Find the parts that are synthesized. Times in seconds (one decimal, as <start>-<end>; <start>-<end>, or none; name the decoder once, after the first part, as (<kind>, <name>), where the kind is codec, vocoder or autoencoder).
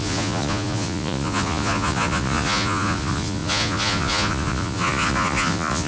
0.0-5.9 (vocoder, Vocos)